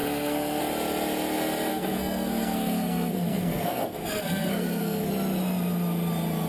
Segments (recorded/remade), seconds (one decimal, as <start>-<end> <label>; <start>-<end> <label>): 0.0-0.6 remade; 0.6-1.7 recorded; 1.7-5.1 remade; 5.1-6.5 recorded